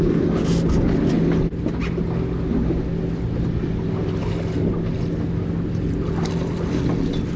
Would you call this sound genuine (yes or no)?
yes